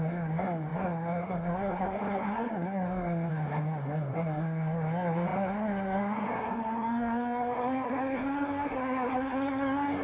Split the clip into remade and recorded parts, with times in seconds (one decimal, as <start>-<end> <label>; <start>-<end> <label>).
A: 0.0-10.0 remade